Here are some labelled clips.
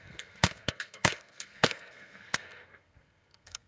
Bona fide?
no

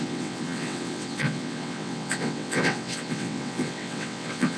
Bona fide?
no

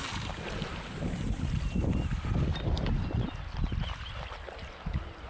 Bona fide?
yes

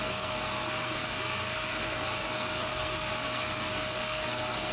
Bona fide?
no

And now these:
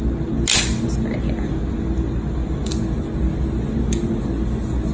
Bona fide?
yes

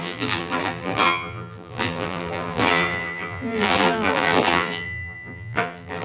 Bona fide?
no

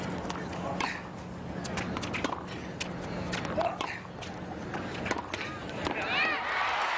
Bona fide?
yes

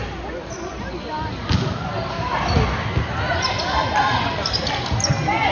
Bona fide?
yes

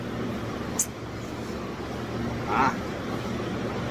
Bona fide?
yes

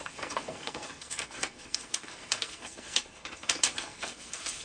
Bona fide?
no